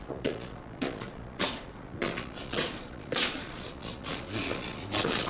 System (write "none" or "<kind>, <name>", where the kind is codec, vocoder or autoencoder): vocoder, Vocos